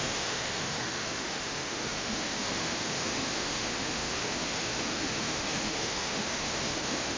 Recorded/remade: remade